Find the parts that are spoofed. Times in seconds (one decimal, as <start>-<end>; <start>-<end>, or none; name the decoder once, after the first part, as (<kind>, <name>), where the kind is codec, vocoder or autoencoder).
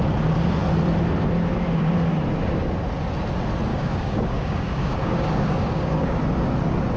3.7-6.2 (codec, DAC)